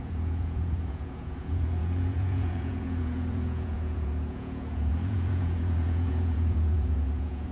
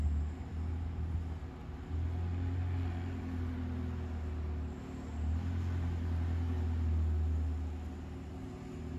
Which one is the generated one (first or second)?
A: first